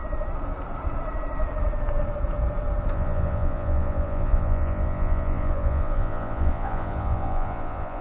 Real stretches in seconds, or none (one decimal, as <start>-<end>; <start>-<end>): 0.0-2.9

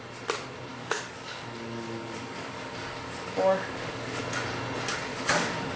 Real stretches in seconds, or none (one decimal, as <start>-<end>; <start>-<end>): 0.0-0.7; 4.2-5.1

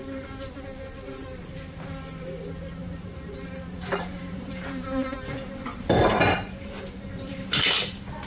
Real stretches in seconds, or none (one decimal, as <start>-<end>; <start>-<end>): 0.0-2.8; 7.6-8.3